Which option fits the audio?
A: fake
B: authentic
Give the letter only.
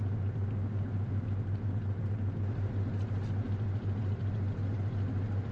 B